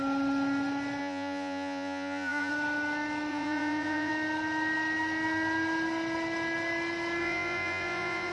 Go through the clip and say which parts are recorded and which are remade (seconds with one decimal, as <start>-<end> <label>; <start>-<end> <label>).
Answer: 0.0-1.0 recorded; 1.0-2.5 remade; 2.5-3.3 recorded; 3.3-4.1 remade; 4.1-7.2 recorded; 7.2-8.3 remade